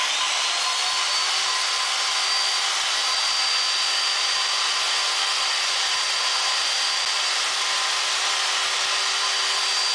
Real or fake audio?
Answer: real